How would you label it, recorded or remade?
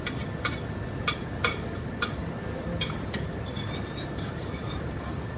recorded